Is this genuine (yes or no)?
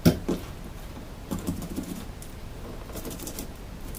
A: yes